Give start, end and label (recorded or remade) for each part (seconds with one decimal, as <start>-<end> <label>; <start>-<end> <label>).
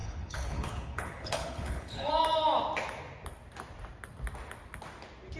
0.0-2.1 remade; 2.1-5.4 recorded